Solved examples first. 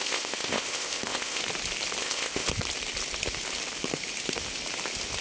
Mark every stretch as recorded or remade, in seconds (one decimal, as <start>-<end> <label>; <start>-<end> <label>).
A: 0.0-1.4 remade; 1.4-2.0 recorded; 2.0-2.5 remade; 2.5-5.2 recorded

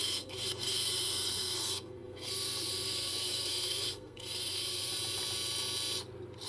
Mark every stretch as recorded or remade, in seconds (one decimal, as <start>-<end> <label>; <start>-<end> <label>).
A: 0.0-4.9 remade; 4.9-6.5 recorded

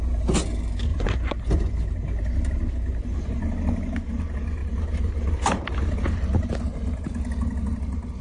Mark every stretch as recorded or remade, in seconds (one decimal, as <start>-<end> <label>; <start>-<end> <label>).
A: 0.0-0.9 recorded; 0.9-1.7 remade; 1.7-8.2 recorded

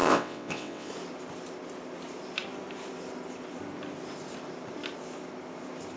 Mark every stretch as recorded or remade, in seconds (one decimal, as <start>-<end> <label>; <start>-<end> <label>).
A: 0.0-0.9 remade; 0.9-6.0 recorded

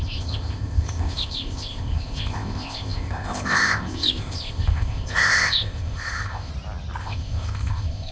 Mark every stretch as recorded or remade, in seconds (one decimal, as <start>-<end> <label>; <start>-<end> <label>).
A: 0.0-6.5 remade; 6.5-7.0 recorded; 7.0-8.1 remade

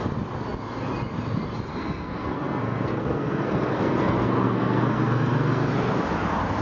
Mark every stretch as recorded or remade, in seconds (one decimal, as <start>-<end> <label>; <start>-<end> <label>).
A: 0.0-1.7 recorded; 1.7-5.7 remade; 5.7-6.6 recorded

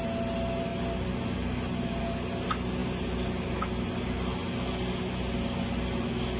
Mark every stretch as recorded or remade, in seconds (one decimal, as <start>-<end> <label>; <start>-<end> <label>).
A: 0.0-6.4 recorded